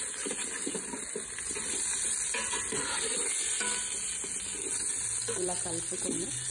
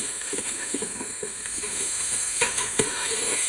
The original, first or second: first